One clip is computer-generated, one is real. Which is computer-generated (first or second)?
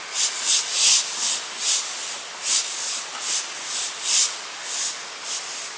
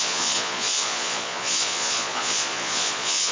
second